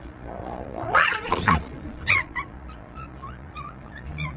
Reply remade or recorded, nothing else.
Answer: remade